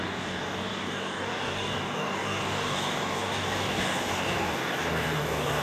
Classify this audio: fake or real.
fake